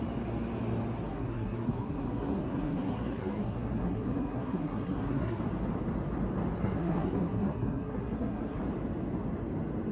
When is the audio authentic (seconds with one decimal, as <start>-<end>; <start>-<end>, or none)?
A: 0.0-1.1; 5.4-6.6; 8.6-9.9